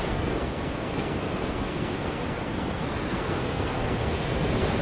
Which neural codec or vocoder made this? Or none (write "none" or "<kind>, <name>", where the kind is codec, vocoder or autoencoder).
codec, SNAC